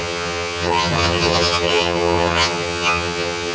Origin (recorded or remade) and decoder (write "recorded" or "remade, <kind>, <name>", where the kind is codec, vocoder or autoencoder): remade, vocoder, HiFi-GAN